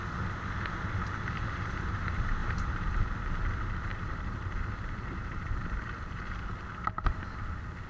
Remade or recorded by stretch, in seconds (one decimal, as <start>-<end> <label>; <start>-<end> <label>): 0.0-2.4 recorded; 2.4-3.0 remade; 3.0-3.9 recorded; 3.9-6.2 remade; 6.2-7.9 recorded